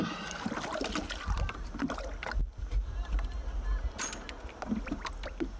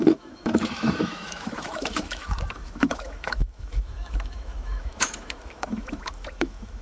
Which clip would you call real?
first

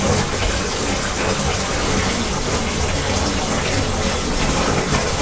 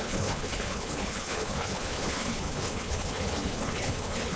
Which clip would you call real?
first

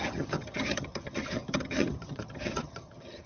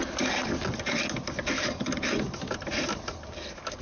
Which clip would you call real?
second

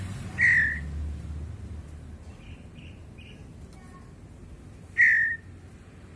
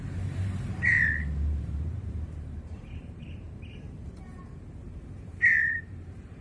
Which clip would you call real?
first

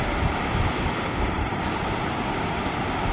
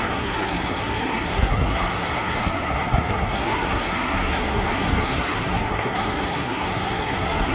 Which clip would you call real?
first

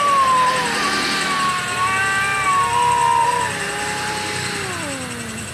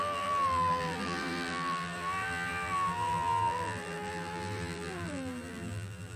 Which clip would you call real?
first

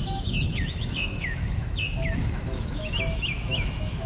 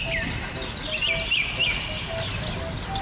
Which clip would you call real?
second